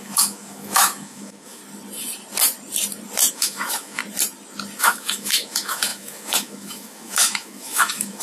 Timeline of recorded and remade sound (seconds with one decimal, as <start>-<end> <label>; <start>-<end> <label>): 0.0-1.6 remade; 1.6-3.3 recorded; 3.3-4.0 remade; 4.0-4.8 recorded; 4.8-8.2 remade